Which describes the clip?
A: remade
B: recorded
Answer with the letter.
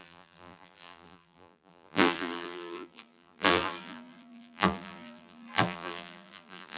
A